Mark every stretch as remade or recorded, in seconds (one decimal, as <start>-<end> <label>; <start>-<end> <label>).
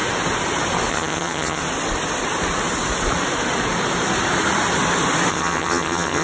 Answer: 0.0-0.9 recorded; 0.9-1.6 remade; 1.6-5.3 recorded; 5.3-6.2 remade